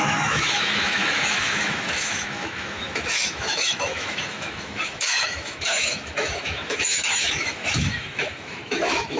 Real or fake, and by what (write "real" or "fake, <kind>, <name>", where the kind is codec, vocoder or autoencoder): fake, autoencoder, DAC-VAE